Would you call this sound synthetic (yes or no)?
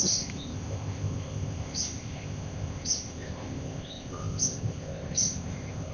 yes